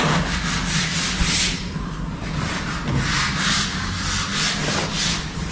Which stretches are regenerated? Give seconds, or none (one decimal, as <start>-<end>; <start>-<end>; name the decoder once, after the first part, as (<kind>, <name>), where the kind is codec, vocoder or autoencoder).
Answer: none

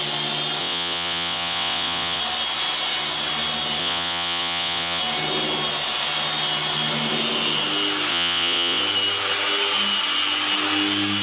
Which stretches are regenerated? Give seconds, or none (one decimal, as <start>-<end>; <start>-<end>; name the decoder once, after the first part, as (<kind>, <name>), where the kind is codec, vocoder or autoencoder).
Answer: 0.6-2.2 (vocoder, WaveNeXt); 3.8-5.0; 8.1-8.8

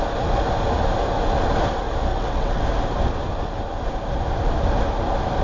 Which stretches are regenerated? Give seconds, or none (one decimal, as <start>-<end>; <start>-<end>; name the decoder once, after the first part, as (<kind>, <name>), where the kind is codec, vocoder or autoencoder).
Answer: 2.1-2.6 (vocoder, WaveNeXt)

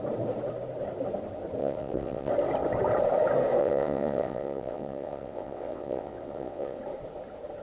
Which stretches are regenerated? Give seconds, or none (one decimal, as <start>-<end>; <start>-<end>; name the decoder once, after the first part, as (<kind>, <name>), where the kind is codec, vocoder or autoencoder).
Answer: 1.6-2.3 (vocoder, WaveNeXt); 3.6-6.8

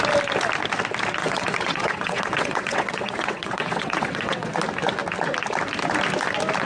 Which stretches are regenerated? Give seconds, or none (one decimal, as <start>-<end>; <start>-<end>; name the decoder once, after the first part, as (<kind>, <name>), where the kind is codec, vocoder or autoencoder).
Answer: 1.2-4.5 (vocoder, WaveNeXt)

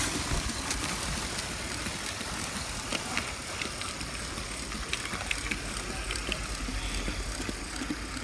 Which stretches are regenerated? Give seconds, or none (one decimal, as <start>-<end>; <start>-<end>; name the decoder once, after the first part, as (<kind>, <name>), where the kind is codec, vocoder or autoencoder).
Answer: none

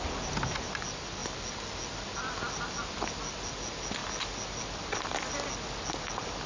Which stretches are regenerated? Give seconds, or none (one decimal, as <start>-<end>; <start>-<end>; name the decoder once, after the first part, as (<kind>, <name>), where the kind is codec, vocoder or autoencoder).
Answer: none